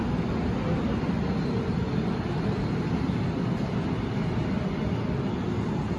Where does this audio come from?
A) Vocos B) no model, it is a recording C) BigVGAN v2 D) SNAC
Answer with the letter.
B